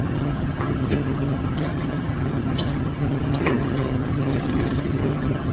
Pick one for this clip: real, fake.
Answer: fake